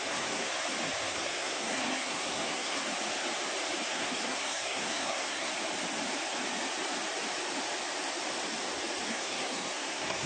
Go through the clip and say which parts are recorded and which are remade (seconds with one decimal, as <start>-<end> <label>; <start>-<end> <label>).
0.0-0.5 remade; 0.5-1.1 recorded; 1.1-2.8 remade; 2.8-3.9 recorded; 3.9-5.5 remade; 5.5-9.1 recorded; 9.1-10.3 remade